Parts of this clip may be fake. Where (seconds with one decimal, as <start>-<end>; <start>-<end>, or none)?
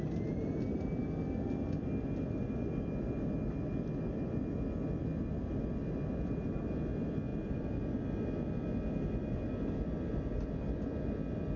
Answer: none